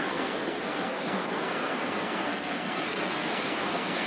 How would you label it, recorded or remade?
remade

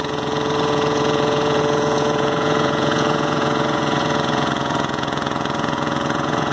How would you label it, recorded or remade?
remade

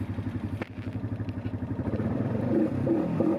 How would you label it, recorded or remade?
remade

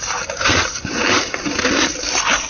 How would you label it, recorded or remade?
recorded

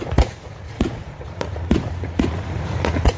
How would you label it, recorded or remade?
remade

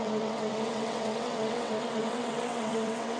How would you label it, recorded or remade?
remade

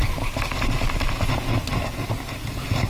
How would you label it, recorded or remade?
recorded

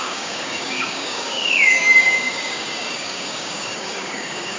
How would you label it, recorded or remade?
remade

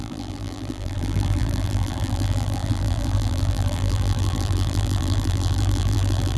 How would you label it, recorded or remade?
remade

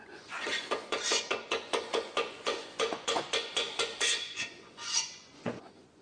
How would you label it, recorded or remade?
remade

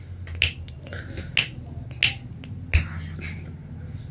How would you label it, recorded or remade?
recorded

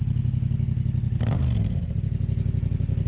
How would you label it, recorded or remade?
recorded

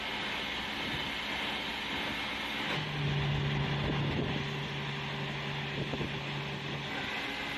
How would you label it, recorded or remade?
recorded